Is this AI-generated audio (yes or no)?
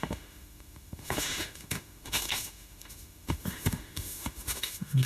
yes